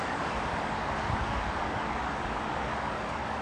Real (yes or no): no